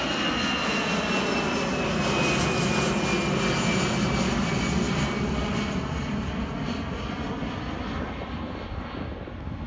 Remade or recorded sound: recorded